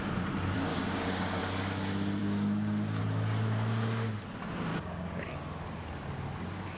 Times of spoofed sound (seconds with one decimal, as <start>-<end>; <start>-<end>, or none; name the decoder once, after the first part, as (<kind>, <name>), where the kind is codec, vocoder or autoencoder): 0.7-1.4 (codec, DAC); 2.2-3.0; 4.7-5.4